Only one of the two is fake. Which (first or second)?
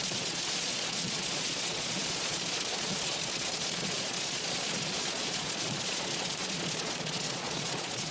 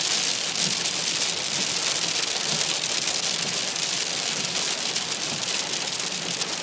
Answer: first